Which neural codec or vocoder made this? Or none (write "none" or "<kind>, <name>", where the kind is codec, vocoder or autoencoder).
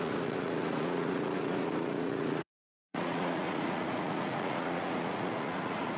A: vocoder, Vocos